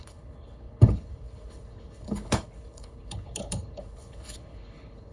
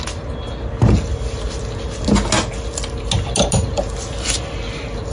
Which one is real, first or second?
second